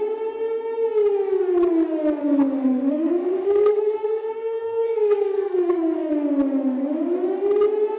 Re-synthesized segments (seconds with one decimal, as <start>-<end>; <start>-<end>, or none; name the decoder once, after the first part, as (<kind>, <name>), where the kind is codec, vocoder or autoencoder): 2.2-6.1 (codec, SNAC)